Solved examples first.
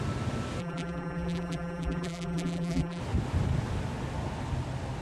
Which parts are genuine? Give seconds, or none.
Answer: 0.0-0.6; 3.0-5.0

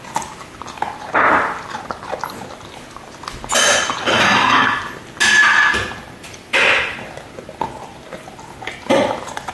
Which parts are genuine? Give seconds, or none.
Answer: 0.0-5.5; 6.6-9.5

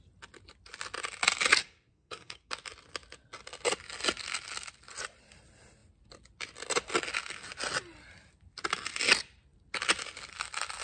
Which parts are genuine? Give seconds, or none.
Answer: 0.0-1.6; 2.5-10.8

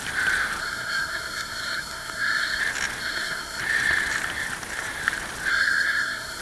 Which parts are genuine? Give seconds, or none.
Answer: 0.0-0.6; 2.6-3.0; 3.6-5.5

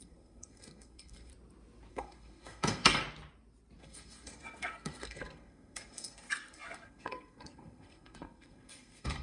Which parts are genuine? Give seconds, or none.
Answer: 1.3-1.9; 3.0-3.8

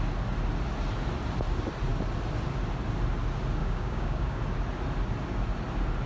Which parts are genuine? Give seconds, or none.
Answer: 0.0-3.6; 4.4-6.1

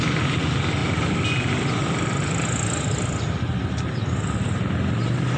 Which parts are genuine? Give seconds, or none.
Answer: 0.0-5.4

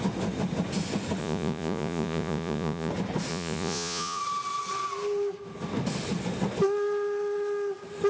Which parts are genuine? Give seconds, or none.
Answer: 0.0-1.2; 2.9-3.3; 4.2-8.1